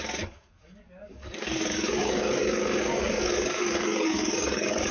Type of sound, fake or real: fake